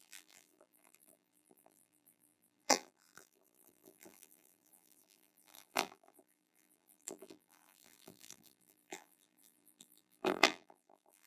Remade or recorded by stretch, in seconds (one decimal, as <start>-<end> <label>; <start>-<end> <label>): 0.0-11.3 remade